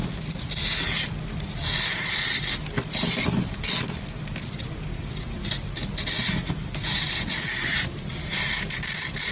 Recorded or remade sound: recorded